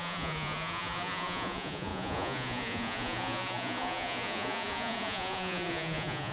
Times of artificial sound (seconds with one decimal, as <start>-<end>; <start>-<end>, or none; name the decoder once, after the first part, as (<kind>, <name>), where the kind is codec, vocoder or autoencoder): 0.0-6.3 (vocoder, Vocos)